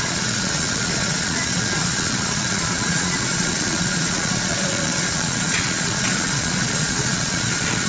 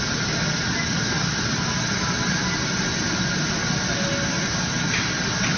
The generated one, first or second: first